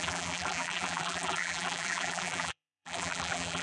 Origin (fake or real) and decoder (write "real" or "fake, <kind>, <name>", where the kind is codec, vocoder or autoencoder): fake, vocoder, BigVGAN v2